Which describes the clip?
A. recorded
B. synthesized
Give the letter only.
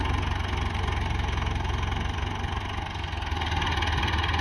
A